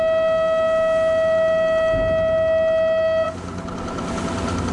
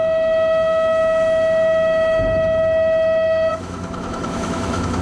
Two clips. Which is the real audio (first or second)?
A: first